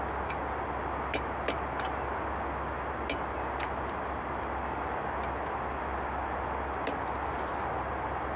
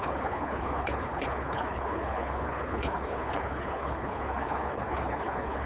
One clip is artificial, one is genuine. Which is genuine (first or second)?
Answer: first